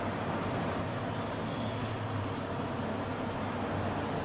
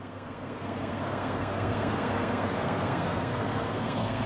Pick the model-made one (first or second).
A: second